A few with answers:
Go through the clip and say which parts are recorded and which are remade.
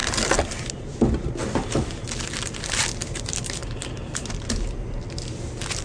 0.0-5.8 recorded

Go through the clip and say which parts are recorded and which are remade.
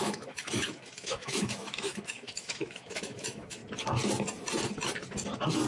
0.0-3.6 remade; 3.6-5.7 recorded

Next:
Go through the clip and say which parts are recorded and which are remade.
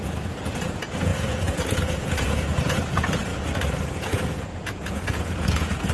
0.0-3.3 remade; 3.3-3.9 recorded; 3.9-5.9 remade